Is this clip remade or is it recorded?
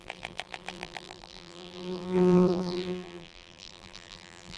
remade